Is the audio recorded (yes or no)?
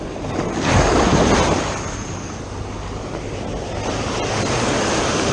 yes